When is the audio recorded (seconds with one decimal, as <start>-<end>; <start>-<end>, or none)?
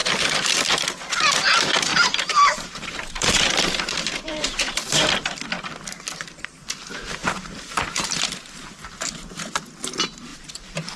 0.0-1.9; 5.1-7.2; 8.9-10.3